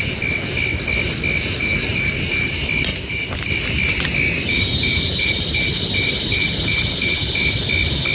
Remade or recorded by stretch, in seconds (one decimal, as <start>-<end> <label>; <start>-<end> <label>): 0.0-1.6 recorded; 1.6-2.5 remade; 2.5-2.9 recorded; 2.9-3.5 remade; 3.5-4.4 recorded; 4.4-7.6 remade; 7.6-8.1 recorded